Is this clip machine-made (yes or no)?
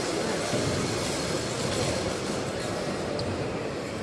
no